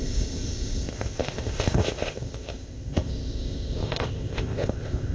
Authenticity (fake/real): fake